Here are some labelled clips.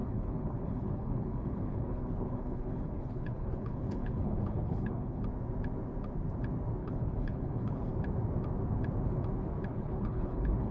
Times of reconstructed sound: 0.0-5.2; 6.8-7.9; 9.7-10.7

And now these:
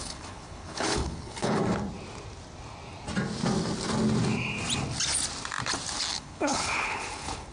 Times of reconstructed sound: 0.0-1.6; 6.1-7.5

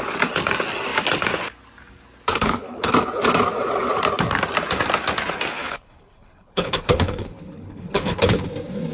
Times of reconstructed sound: 2.3-2.9; 5.5-8.5

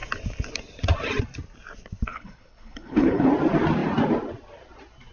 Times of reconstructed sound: 2.1-3.3

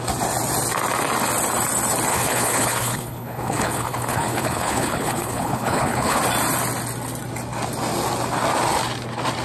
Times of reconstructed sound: 2.1-6.2